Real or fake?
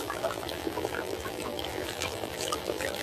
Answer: fake